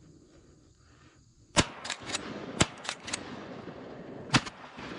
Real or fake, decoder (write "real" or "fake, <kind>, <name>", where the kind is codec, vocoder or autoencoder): fake, vocoder, Vocos